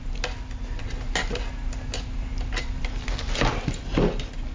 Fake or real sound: real